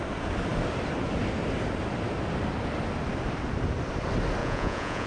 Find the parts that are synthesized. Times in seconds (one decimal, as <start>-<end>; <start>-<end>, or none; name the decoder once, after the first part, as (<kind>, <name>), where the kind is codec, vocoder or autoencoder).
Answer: 4.4-5.1 (vocoder, Vocos)